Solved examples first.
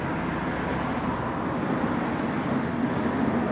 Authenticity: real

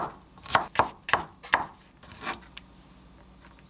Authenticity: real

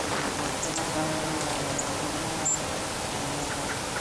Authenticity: real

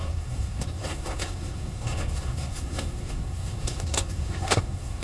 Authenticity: fake